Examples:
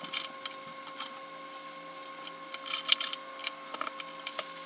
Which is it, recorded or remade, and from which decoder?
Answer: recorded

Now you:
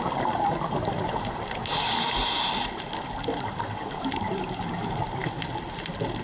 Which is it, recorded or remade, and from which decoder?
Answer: recorded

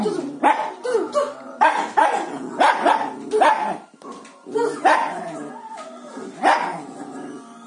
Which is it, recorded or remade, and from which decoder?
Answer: recorded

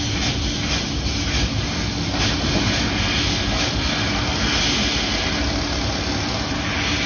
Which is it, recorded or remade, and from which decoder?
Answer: recorded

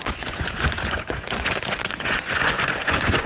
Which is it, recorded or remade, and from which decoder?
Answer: remade, vocoder, Vocos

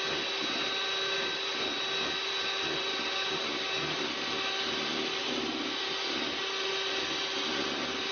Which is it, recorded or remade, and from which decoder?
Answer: recorded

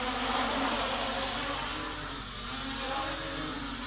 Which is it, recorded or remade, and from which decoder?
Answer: recorded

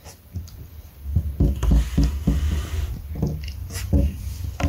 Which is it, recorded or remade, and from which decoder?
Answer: recorded